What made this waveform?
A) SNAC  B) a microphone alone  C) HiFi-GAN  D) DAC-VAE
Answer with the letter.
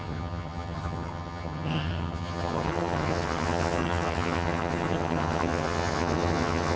C